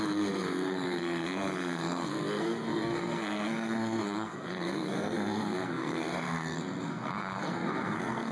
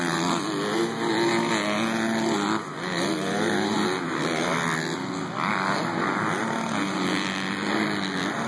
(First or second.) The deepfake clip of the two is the first